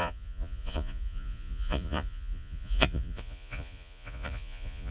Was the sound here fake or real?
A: fake